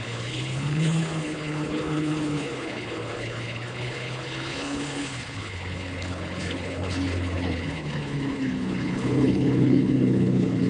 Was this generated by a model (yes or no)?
yes